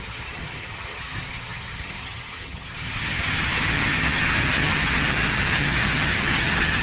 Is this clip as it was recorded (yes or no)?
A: no